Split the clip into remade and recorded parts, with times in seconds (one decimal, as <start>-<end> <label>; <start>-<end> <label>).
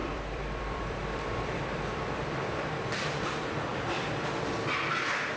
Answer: 0.0-2.7 remade; 2.7-5.4 recorded